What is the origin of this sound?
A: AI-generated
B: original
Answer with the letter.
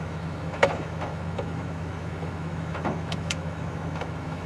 A